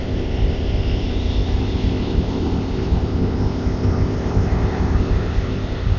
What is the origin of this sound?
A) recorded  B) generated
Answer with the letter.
B